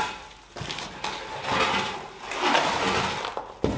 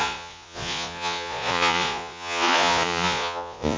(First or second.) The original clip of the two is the first